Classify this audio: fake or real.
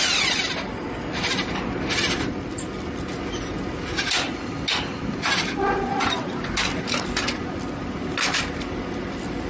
real